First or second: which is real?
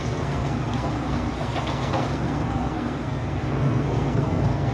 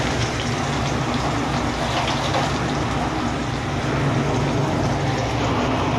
second